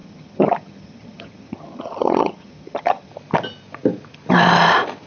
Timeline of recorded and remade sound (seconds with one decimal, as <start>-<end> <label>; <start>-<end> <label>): 0.0-3.1 remade; 3.1-5.1 recorded